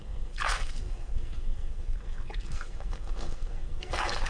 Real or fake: fake